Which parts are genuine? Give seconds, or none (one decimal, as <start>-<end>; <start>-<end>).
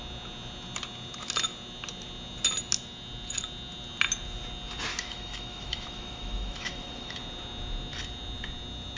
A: 0.0-4.9; 7.1-9.0